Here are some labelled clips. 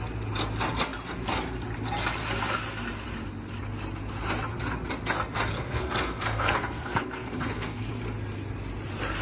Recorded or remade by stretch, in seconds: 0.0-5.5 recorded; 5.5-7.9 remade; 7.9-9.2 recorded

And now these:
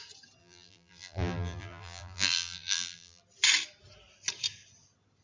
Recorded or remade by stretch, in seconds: 0.0-0.4 recorded; 0.4-3.2 remade; 3.2-5.2 recorded

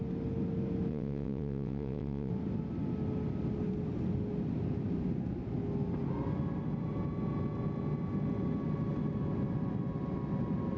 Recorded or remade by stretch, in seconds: 0.0-0.9 recorded; 0.9-2.3 remade; 2.3-10.8 recorded